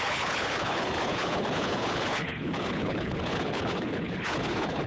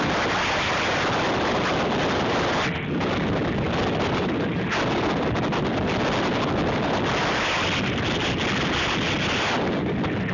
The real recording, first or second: second